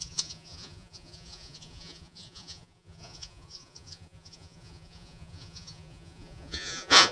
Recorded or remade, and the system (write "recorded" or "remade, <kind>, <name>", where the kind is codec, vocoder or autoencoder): remade, vocoder, Vocos